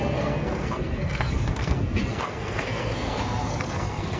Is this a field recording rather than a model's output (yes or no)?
no